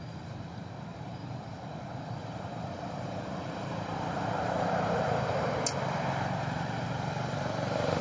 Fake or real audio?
fake